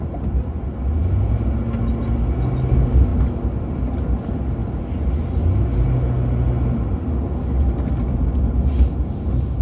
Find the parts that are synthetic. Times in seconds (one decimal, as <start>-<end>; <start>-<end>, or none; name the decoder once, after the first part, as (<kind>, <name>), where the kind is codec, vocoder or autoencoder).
none